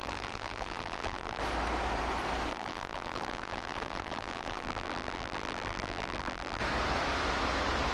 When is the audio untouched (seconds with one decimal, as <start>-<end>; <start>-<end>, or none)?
1.4-2.5; 6.6-7.9